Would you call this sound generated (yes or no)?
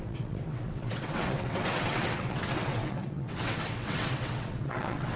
yes